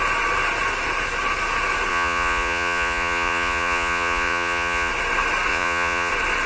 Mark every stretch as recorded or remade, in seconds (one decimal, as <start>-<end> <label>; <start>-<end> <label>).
0.0-1.9 recorded; 1.9-4.9 remade; 4.9-5.5 recorded; 5.5-6.1 remade; 6.1-6.5 recorded